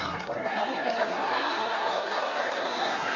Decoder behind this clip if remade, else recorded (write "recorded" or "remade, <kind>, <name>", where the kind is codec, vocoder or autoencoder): remade, codec, SNAC